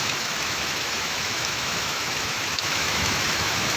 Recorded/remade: remade